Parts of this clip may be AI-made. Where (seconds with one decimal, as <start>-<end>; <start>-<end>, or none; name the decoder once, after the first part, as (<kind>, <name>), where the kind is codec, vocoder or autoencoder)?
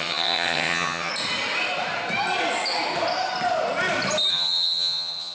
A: 0.0-1.1 (vocoder, HiFi-GAN); 4.3-5.3